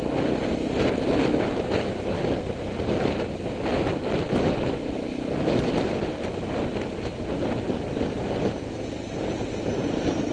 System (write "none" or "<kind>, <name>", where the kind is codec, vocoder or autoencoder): none